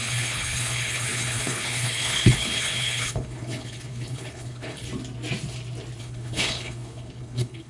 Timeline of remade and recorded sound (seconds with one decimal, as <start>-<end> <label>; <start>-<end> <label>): 0.0-4.9 remade; 4.9-6.0 recorded; 6.0-7.7 remade